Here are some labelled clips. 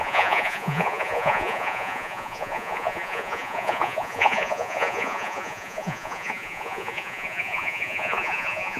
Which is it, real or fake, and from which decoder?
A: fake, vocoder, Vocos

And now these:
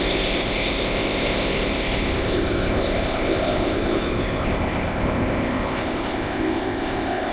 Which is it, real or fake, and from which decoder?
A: fake, codec, ZipCodec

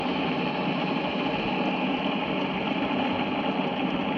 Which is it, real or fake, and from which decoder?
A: real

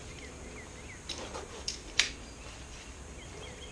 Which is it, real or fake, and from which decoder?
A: fake, vocoder, BigVGAN v2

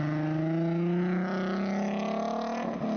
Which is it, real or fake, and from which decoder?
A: real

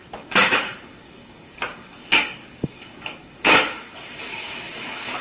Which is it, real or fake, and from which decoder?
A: fake, codec, DAC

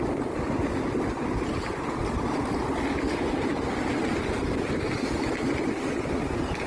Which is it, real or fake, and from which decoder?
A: real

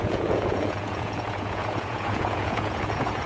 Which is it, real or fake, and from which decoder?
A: fake, vocoder, Vocos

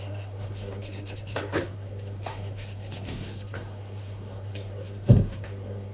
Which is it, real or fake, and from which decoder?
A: fake, codec, SNAC